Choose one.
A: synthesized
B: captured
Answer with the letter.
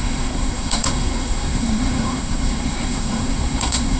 A